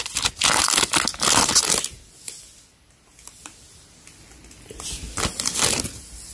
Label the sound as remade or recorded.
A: recorded